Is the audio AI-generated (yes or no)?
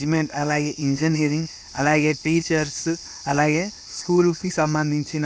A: yes